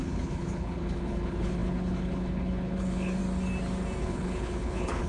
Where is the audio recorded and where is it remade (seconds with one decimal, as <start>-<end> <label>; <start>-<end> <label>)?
0.0-3.2 remade; 3.2-4.0 recorded; 4.0-5.1 remade